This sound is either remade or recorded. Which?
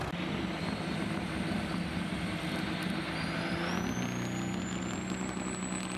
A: recorded